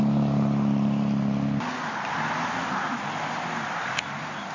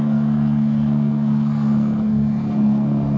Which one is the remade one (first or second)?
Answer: second